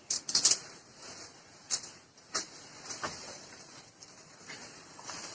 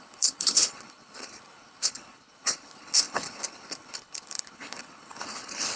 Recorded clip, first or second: first